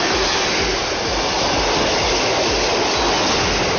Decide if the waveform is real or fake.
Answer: real